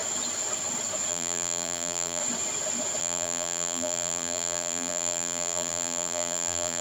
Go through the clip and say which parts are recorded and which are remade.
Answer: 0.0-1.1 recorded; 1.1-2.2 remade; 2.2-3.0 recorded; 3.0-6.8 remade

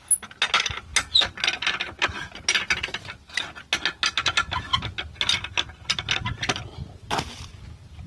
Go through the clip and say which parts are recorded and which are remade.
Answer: 0.0-8.1 recorded

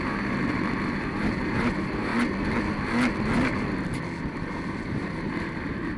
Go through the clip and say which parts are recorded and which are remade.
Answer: 0.0-2.1 remade; 2.1-4.2 recorded; 4.2-6.0 remade

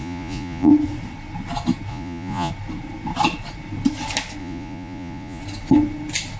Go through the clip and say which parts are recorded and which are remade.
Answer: 0.0-0.7 remade; 0.7-1.9 recorded; 1.9-2.5 remade; 2.5-4.4 recorded; 4.4-5.4 remade; 5.4-6.4 recorded

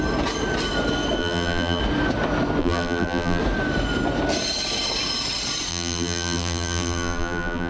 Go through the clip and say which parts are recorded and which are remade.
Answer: 0.0-1.2 recorded; 1.2-1.8 remade; 1.8-2.6 recorded; 2.6-3.4 remade; 3.4-5.7 recorded; 5.7-7.7 remade

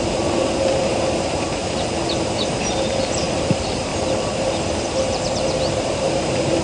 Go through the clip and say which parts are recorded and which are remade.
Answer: 0.0-1.6 remade; 1.6-2.2 recorded; 2.2-3.9 remade; 3.9-4.8 recorded; 4.8-6.6 remade